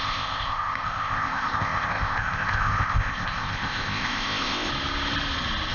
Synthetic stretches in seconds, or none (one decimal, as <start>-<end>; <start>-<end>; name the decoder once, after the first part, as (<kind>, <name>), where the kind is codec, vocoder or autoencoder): 0.0-4.7 (codec, ZipCodec)